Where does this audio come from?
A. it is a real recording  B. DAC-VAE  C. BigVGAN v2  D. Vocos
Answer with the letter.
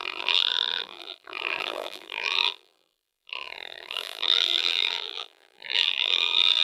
C